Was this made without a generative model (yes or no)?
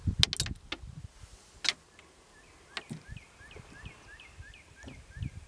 yes